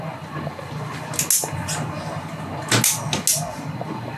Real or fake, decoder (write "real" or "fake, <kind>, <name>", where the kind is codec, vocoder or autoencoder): real